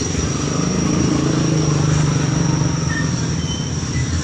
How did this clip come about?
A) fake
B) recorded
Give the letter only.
B